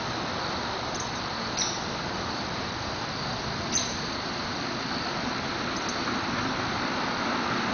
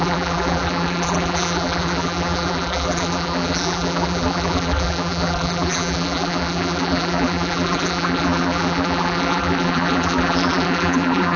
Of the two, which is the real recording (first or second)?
first